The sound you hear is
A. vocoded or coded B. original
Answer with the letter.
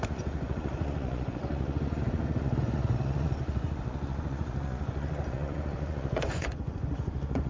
A